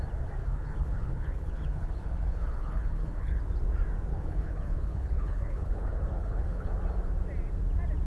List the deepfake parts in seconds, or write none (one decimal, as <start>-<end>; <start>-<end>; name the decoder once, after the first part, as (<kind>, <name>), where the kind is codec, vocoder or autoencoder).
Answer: 0.4-3.4 (codec, HILCodec); 4.1-6.7